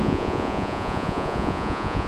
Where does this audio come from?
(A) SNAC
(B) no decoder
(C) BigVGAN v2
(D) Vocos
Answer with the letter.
D